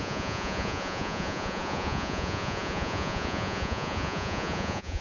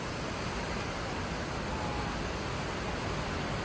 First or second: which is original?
second